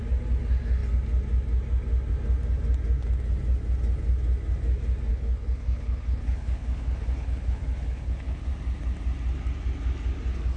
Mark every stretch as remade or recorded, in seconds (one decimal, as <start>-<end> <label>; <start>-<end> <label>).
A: 0.0-5.1 recorded; 5.1-8.5 remade; 8.5-10.6 recorded